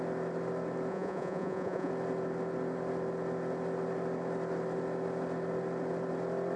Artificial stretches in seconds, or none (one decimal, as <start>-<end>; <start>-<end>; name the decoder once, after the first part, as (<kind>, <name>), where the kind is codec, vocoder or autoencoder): 0.9-1.9 (vocoder, Vocos)